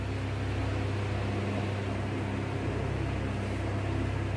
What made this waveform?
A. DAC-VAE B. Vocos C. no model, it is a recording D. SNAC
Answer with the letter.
C